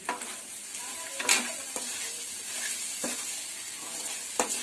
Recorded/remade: recorded